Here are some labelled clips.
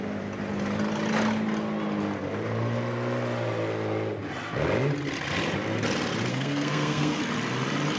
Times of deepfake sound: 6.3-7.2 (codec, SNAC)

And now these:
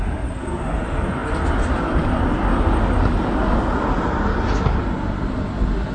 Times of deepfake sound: none

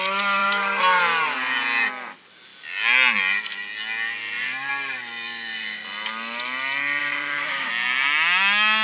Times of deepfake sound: 0.4-1.0 (vocoder, BigVGAN v2); 7.0-7.7